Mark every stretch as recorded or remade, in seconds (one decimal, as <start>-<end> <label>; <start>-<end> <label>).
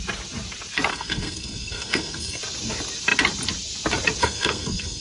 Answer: 0.0-0.9 recorded; 0.9-2.4 remade; 2.4-4.2 recorded; 4.2-5.0 remade